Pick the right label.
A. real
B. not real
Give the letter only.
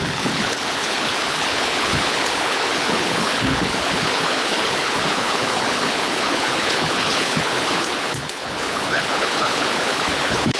B